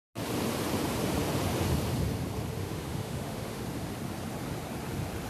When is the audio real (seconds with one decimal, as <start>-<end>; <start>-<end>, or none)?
0.0-2.6; 3.6-5.3

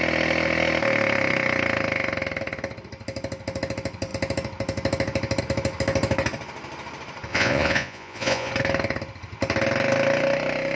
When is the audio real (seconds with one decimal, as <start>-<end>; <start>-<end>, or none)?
0.0-7.3; 8.5-10.8

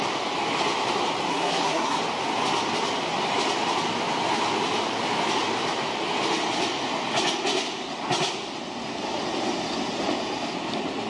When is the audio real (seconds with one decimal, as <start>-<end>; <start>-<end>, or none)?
0.0-1.3; 2.0-11.1

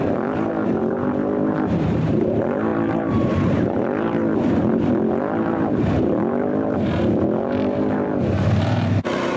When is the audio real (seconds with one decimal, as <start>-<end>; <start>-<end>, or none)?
none

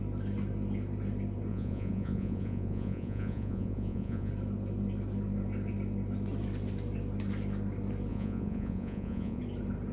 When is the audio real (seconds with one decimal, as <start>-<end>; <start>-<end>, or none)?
0.0-1.5; 4.3-8.1; 9.4-9.9

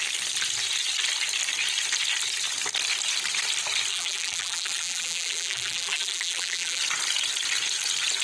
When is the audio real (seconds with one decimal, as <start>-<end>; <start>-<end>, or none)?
0.0-3.9; 6.8-8.2